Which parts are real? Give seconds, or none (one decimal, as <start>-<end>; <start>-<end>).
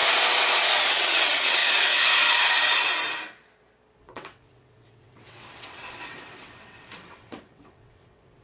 0.0-0.9; 1.6-4.0